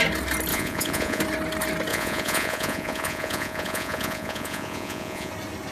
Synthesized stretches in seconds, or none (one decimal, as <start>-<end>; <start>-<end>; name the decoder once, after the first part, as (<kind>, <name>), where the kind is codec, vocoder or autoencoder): 0.5-1.2 (vocoder, Vocos); 1.9-5.3